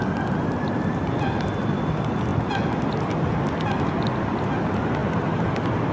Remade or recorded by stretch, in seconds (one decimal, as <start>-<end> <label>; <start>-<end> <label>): 0.0-5.9 recorded